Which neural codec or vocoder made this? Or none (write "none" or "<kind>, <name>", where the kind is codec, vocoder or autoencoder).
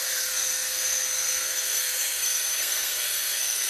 codec, SNAC